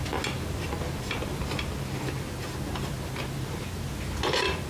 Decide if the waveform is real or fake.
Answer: real